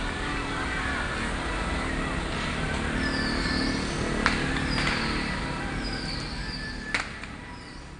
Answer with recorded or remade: recorded